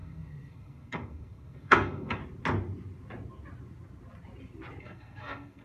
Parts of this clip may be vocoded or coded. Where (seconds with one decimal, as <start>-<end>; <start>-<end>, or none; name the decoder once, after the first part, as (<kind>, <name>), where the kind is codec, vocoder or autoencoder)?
0.0-2.2 (codec, SNAC); 4.8-5.6